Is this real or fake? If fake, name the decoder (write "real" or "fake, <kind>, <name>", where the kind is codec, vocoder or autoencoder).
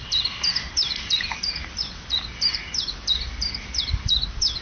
real